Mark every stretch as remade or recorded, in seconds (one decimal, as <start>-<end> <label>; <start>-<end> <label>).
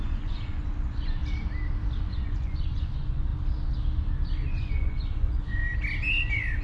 0.0-1.2 remade; 1.2-2.0 recorded; 2.0-3.3 remade; 3.3-4.5 recorded; 4.5-5.6 remade; 5.6-6.6 recorded